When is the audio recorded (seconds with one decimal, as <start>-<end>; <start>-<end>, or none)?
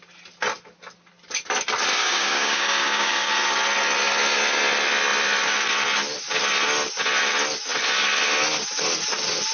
0.0-2.0; 3.3-9.5